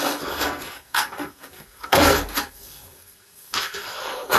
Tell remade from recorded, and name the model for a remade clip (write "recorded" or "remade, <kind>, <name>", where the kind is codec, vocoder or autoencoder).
remade, codec, SNAC